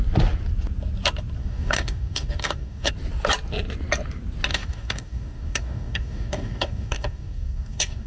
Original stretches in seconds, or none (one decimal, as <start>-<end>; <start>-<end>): 0.0-1.4; 2.9-4.5